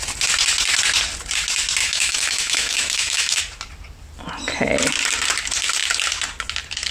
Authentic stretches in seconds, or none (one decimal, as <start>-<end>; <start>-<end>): 0.0-1.8; 3.4-6.9